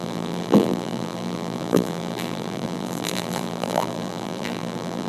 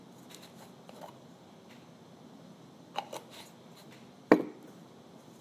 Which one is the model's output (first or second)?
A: first